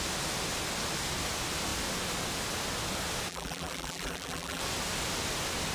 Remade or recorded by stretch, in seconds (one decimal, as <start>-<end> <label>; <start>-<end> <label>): 0.0-3.3 recorded; 3.3-4.6 remade; 4.6-5.7 recorded